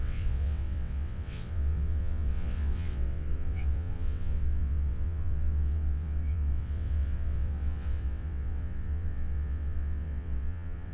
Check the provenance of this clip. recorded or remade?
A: remade